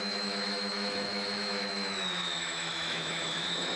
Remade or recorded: remade